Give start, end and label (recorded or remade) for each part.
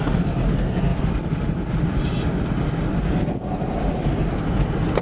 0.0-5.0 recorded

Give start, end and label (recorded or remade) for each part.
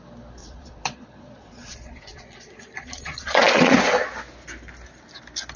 0.0-0.4 recorded; 0.4-3.8 remade; 3.8-5.6 recorded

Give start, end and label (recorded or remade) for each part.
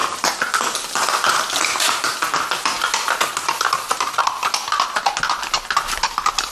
0.0-6.5 recorded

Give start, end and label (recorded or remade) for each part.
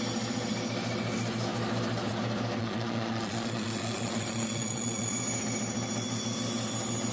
0.0-2.6 recorded; 2.6-5.1 remade; 5.1-7.1 recorded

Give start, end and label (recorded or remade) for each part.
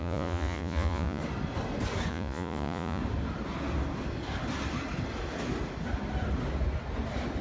0.0-1.2 remade; 1.2-2.1 recorded; 2.1-3.0 remade; 3.0-7.4 recorded